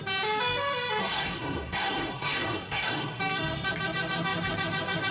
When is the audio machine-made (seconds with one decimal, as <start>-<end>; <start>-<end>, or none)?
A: 1.0-3.2